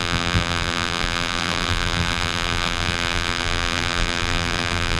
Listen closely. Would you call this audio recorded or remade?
remade